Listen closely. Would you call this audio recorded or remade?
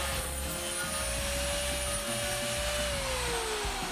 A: recorded